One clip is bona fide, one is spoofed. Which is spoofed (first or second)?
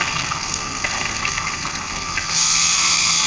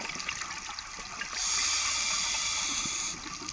first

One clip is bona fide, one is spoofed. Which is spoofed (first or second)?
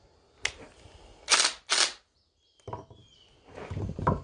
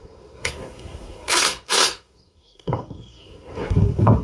second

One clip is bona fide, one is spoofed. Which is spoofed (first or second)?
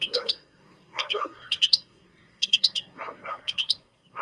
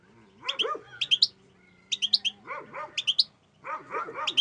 first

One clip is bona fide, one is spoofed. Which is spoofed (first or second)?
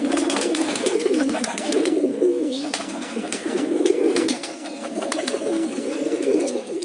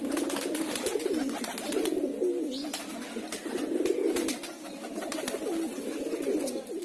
first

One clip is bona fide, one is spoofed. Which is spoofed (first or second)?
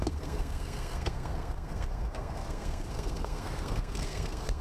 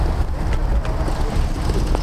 first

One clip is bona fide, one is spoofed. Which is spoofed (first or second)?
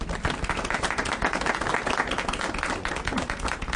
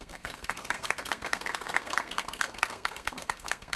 second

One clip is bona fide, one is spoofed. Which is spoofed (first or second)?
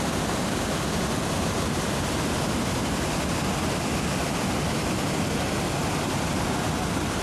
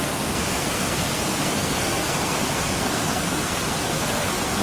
second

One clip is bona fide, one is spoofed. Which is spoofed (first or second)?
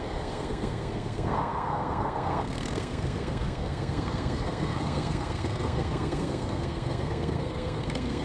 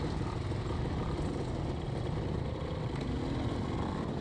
first